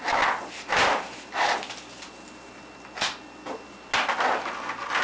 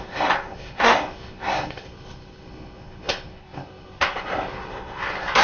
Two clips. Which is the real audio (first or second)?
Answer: first